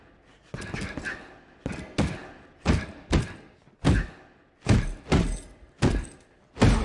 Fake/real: real